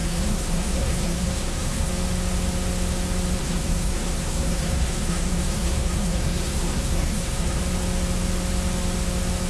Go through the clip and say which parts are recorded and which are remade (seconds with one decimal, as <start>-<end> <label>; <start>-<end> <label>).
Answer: 0.0-1.9 remade; 1.9-3.4 recorded; 3.4-7.6 remade; 7.6-9.5 recorded